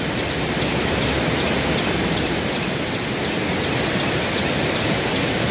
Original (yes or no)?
yes